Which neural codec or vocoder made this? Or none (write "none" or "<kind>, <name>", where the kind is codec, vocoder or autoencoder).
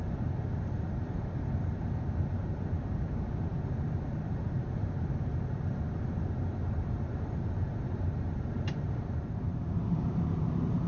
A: vocoder, BigVGAN v2